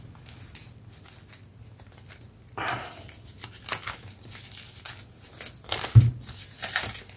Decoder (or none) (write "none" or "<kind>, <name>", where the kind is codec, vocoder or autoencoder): none